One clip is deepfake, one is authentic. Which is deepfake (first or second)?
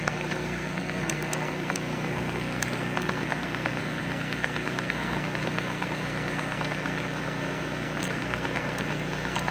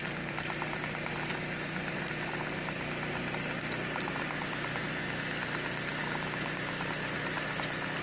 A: first